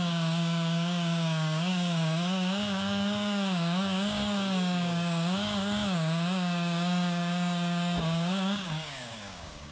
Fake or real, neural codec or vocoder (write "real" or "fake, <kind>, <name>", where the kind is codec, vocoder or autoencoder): fake, codec, DAC